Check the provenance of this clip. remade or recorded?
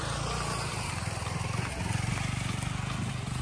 recorded